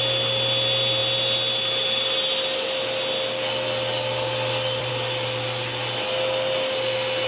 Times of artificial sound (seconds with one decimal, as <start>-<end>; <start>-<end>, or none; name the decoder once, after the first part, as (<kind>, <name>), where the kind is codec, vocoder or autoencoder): none